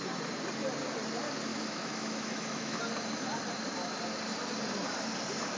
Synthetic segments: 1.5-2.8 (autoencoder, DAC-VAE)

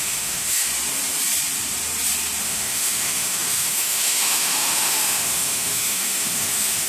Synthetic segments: 0.0-0.7 (autoencoder, DAC-VAE); 2.4-6.9

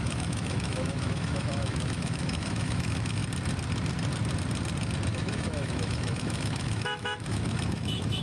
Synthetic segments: 0.0-3.2 (autoencoder, DAC-VAE); 5.1-8.2

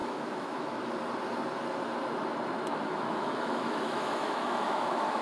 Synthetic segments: 0.0-0.9 (autoencoder, DAC-VAE); 2.7-5.2

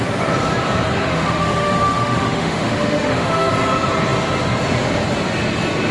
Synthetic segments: 1.1-3.5 (autoencoder, DAC-VAE)

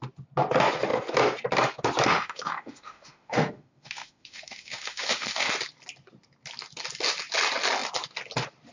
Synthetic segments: 2.1-5.5 (autoencoder, DAC-VAE)

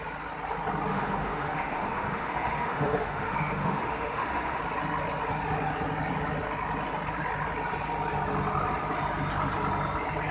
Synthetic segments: 0.9-4.6 (autoencoder, DAC-VAE)